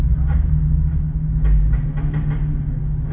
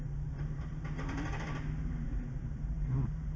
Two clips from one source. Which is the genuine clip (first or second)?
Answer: first